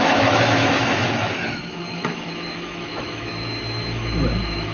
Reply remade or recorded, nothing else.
remade